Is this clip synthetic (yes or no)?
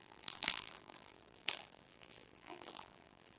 yes